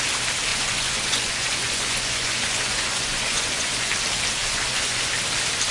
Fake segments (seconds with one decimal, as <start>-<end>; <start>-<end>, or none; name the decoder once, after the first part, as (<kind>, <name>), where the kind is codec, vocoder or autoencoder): 0.5-3.9 (vocoder, Vocos); 4.4-5.1